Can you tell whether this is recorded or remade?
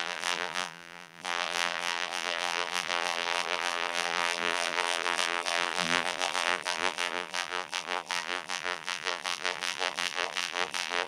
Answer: remade